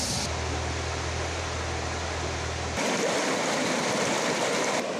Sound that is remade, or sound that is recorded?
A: recorded